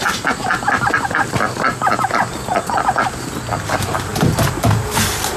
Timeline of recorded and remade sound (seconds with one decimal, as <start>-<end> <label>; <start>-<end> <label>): 0.0-4.1 recorded; 4.1-5.4 remade